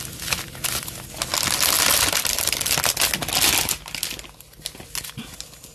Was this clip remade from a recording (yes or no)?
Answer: no